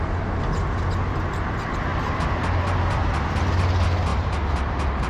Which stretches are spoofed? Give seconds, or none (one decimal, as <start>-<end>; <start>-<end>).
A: 4.1-5.1

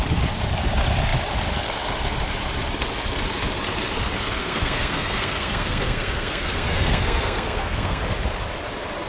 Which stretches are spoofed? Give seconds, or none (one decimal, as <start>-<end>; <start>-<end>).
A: 4.4-8.0